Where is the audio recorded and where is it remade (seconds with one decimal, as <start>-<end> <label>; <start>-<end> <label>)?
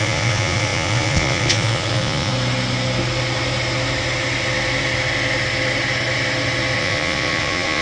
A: 0.0-2.3 remade; 2.3-6.8 recorded; 6.8-7.8 remade